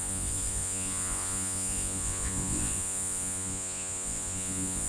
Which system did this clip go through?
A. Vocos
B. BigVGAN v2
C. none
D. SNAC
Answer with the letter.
A